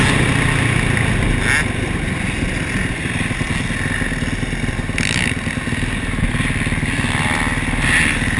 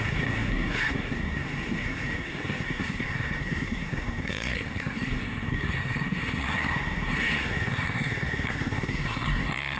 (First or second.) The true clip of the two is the first